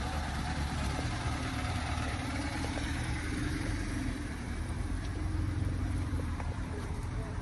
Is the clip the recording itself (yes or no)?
no